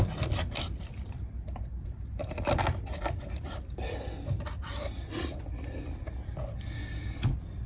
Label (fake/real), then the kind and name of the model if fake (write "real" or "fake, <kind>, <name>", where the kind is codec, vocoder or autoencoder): real